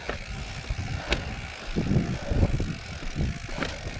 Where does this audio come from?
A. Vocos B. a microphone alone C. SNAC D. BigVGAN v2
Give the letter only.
B